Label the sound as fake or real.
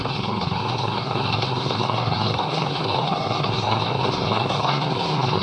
fake